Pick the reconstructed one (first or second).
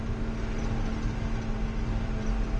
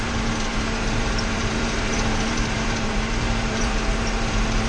second